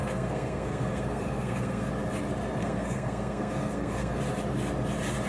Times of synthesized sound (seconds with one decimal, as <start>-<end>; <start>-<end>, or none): 0.0-1.9; 2.6-4.2